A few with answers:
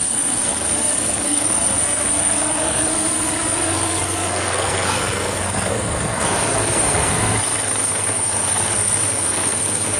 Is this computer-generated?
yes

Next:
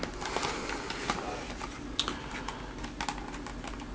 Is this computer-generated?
no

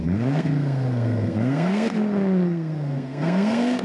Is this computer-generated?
yes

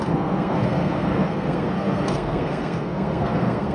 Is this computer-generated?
yes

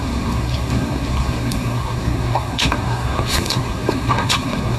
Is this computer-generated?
yes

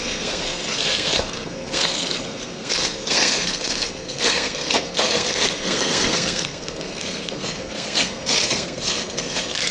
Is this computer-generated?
yes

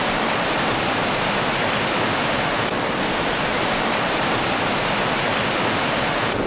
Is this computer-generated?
no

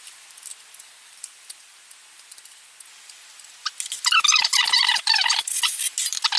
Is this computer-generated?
no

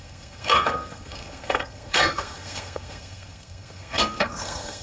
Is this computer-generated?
yes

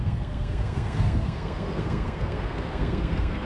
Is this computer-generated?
yes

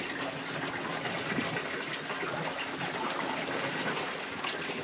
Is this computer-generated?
no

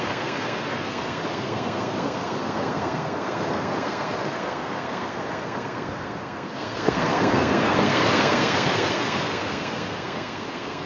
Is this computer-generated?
yes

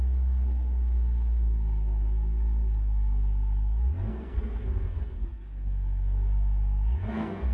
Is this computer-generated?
yes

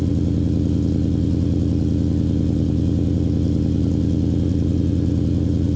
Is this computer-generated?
no